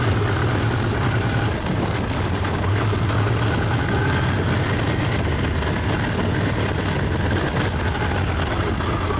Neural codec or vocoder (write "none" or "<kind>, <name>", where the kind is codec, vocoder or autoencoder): none